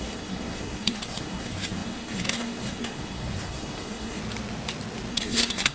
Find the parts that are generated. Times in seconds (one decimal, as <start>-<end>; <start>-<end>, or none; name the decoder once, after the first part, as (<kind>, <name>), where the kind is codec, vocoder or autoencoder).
0.0-4.2 (codec, SNAC); 5.1-5.7